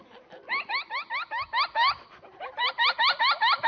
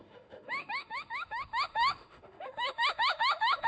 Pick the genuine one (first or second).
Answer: first